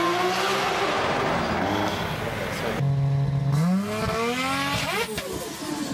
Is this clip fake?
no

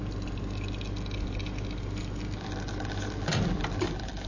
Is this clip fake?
no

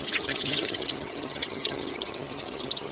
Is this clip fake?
yes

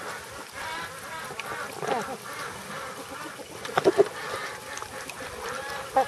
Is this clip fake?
no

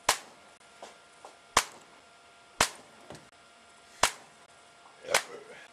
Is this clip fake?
no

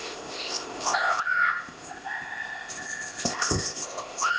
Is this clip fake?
yes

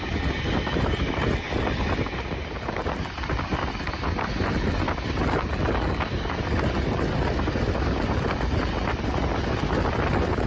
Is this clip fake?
no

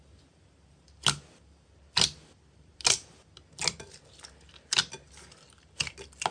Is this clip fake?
no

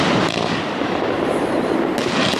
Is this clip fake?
no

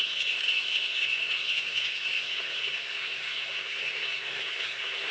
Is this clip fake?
yes